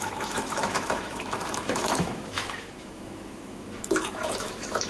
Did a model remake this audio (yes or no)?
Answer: yes